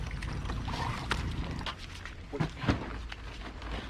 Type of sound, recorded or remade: recorded